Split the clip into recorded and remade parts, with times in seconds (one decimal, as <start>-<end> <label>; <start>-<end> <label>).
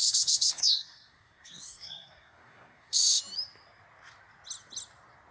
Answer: 0.0-3.2 remade; 3.2-5.3 recorded